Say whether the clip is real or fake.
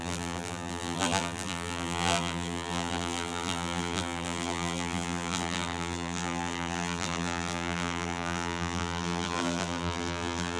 fake